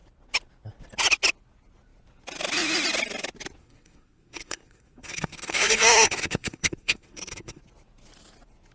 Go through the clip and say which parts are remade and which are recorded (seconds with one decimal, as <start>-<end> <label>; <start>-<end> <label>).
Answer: 0.0-3.6 recorded; 3.6-7.6 remade; 7.6-8.7 recorded